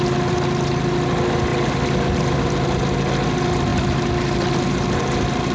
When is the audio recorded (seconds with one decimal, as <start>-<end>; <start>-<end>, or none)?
0.0-3.7; 4.5-5.5